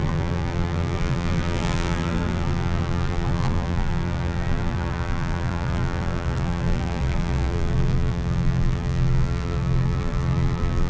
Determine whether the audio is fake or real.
fake